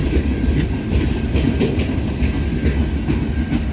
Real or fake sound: real